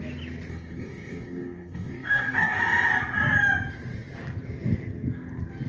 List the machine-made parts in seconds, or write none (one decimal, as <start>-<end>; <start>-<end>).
0.5-2.6